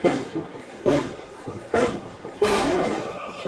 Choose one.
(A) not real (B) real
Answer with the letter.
A